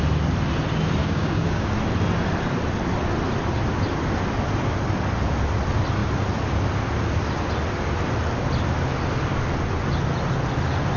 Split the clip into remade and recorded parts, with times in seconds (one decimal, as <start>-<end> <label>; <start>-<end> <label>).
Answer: 0.0-1.0 recorded; 1.0-1.7 remade; 1.7-11.0 recorded